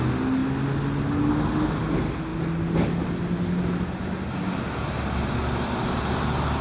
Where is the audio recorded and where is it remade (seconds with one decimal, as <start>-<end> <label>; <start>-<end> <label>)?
0.0-6.6 recorded

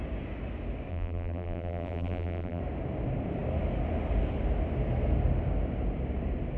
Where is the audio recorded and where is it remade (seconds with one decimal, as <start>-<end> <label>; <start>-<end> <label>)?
0.0-0.9 recorded; 0.9-2.6 remade; 2.6-6.6 recorded

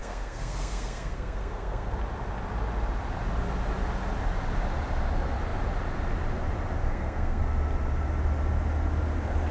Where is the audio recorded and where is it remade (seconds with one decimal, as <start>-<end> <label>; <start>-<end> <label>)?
0.0-1.9 remade; 1.9-6.8 recorded; 6.8-7.4 remade; 7.4-9.5 recorded

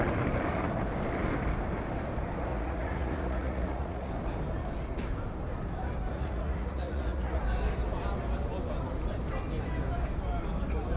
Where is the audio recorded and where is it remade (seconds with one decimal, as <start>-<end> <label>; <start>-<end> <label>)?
0.0-2.5 recorded; 2.5-4.1 remade; 4.1-6.1 recorded; 6.1-7.4 remade; 7.4-11.0 recorded

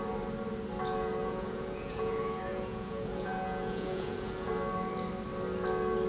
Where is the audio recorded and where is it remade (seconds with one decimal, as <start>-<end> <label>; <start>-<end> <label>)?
0.0-1.2 recorded; 1.2-4.5 remade; 4.5-6.1 recorded

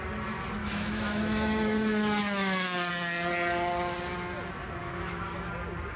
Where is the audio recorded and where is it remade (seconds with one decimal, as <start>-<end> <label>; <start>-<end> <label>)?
0.0-0.6 recorded; 0.6-2.9 remade; 2.9-4.8 recorded; 4.8-5.5 remade; 5.5-6.0 recorded